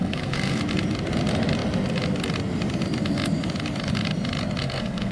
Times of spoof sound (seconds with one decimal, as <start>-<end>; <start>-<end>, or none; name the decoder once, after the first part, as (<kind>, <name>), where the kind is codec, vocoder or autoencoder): 0.0-0.6 (codec, SNAC); 4.6-5.1